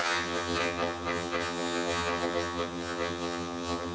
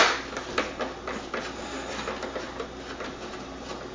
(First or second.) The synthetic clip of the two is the first